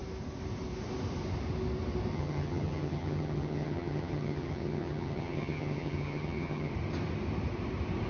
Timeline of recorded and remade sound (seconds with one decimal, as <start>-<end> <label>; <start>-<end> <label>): 0.0-2.1 recorded; 2.1-6.7 remade; 6.7-8.1 recorded